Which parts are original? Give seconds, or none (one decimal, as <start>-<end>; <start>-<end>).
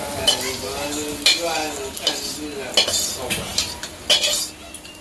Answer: 0.0-5.0